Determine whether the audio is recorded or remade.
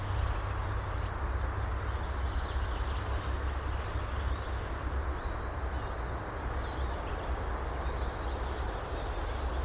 recorded